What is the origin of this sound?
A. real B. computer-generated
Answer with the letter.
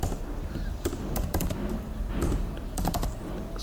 B